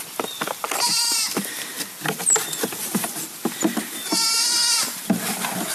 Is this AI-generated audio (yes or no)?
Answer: no